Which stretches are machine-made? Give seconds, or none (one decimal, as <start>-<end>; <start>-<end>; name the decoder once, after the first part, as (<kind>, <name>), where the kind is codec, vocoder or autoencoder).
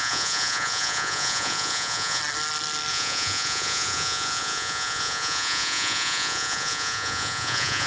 0.0-2.2 (vocoder, Vocos); 2.9-7.9